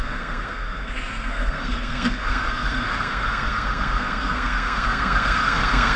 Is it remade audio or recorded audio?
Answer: remade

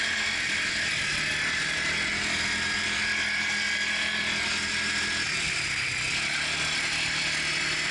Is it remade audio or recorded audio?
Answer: recorded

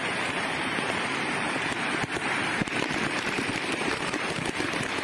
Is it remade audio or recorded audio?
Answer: remade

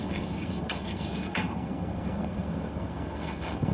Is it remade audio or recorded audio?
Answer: remade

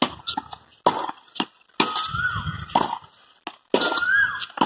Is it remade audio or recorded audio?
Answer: recorded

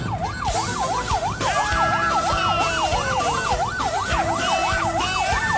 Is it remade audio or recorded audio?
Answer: recorded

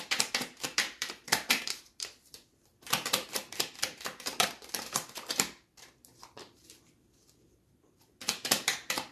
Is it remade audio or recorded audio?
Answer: remade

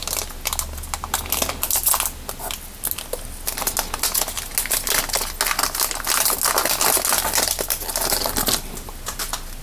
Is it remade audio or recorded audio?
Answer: recorded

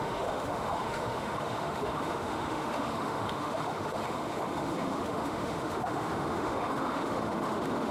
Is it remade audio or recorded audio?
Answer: remade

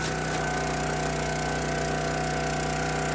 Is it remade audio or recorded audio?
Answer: recorded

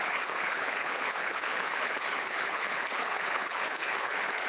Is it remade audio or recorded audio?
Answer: remade